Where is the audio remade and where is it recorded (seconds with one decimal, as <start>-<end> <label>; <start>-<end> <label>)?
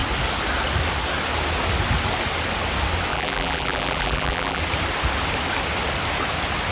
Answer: 0.0-3.1 recorded; 3.1-4.6 remade; 4.6-6.7 recorded